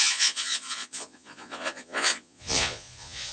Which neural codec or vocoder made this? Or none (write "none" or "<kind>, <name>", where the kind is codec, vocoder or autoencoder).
vocoder, Vocos